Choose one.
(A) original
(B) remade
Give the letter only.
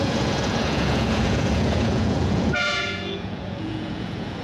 B